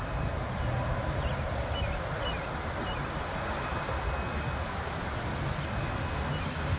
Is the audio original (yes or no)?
yes